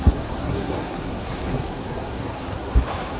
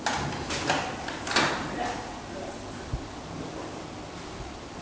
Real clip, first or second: second